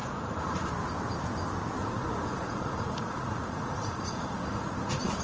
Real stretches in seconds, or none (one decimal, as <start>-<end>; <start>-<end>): 0.7-1.8